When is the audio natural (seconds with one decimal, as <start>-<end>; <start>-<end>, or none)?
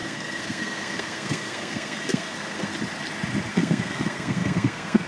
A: 2.7-3.5